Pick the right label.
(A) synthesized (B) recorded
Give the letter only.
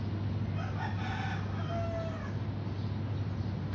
B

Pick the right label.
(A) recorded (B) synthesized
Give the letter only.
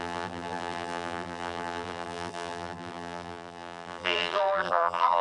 B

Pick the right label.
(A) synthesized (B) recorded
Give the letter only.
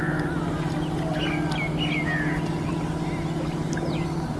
B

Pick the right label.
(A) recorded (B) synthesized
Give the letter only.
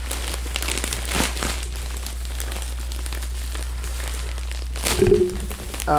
A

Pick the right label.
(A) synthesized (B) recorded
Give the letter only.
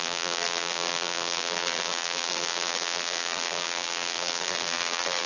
A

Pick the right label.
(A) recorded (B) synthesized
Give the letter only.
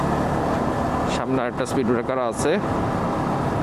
A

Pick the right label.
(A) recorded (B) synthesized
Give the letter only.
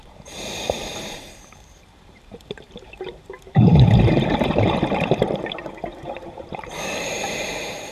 B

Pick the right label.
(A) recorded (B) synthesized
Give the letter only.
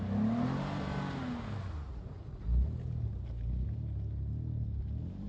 A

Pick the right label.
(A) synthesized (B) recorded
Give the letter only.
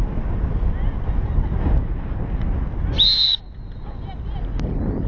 B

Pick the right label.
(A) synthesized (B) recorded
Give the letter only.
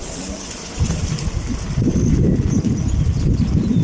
B